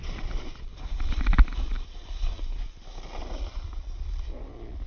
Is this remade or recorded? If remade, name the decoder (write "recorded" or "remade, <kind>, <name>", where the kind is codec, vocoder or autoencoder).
recorded